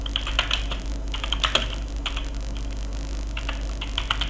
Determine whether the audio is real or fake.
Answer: real